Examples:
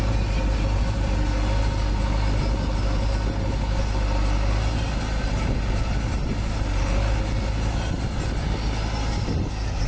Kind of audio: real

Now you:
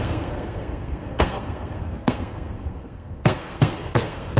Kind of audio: fake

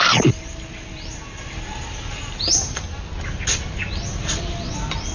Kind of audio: real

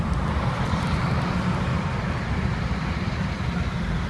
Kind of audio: real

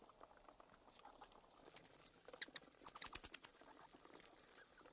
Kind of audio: real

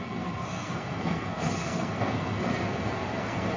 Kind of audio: fake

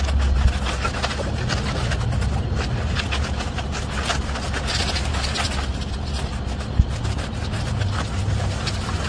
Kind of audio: real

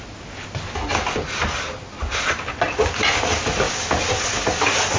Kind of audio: real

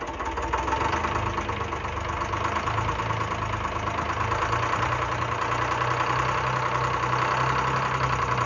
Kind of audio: real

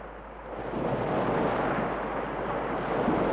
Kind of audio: real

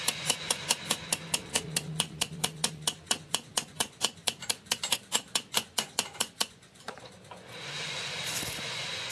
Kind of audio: fake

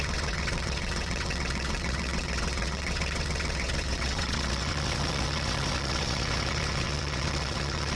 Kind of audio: fake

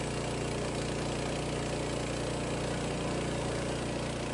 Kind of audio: real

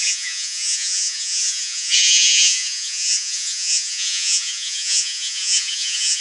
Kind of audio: fake